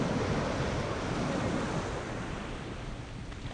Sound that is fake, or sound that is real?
real